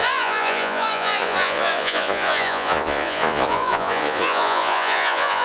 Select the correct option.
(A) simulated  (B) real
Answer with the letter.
A